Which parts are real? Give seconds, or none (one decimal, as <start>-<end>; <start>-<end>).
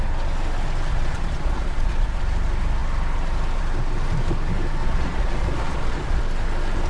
0.0-0.9; 2.2-4.8; 6.2-6.9